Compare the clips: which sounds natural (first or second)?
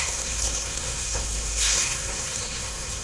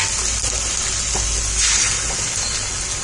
second